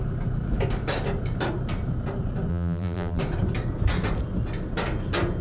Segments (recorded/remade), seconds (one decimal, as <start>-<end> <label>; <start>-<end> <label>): 0.0-2.5 recorded; 2.5-3.2 remade; 3.2-5.4 recorded